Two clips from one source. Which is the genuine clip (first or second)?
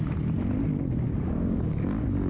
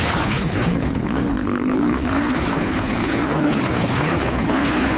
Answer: first